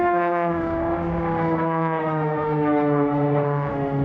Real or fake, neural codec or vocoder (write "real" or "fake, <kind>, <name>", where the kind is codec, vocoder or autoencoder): fake, autoencoder, DAC-VAE